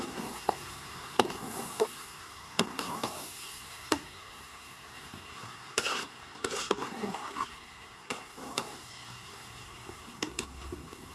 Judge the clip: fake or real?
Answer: fake